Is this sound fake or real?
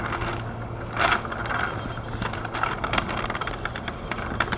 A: real